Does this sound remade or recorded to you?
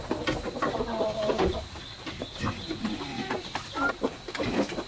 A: recorded